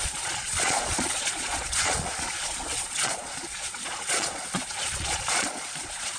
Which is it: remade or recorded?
remade